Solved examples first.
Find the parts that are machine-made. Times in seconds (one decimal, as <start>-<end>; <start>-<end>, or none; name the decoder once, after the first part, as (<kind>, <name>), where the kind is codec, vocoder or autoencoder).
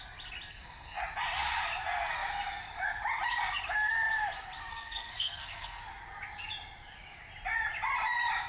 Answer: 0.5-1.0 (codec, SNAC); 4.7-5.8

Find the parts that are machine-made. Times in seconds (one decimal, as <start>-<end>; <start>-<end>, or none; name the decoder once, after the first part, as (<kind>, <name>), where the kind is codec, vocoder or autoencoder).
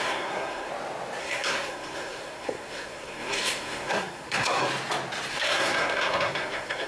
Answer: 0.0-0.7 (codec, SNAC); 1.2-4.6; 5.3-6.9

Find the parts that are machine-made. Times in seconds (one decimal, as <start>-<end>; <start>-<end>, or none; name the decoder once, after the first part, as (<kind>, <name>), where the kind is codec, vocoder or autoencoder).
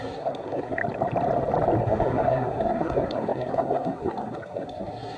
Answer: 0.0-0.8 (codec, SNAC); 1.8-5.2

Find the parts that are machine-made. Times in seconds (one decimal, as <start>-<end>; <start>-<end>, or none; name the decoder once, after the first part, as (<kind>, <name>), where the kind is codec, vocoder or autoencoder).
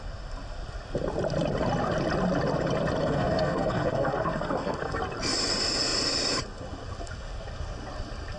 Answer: 3.0-5.0 (codec, SNAC)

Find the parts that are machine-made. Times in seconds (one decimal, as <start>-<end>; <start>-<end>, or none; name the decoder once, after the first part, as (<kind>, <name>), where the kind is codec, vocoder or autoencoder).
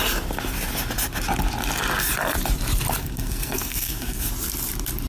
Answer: 3.0-4.3 (codec, SNAC)